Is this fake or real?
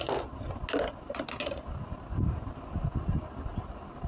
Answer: real